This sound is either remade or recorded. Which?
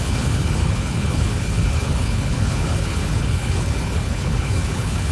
remade